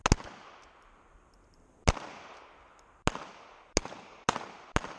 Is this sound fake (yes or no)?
no